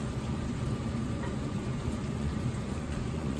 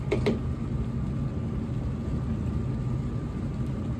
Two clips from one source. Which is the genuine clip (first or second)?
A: second